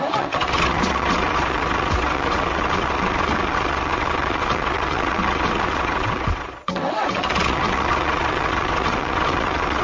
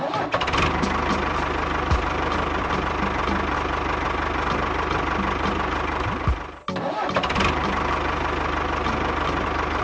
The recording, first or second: second